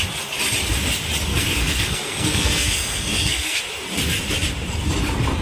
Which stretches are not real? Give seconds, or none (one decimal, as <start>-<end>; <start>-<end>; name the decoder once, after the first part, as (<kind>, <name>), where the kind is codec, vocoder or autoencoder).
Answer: 1.3-3.6 (codec, SNAC)